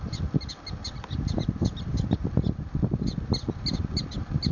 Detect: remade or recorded recorded